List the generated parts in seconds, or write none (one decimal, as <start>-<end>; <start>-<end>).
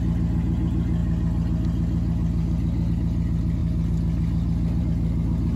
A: none